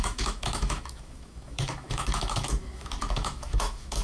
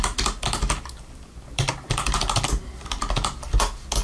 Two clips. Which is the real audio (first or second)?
second